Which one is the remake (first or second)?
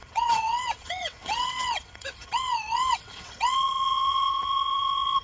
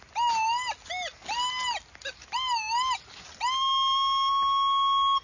first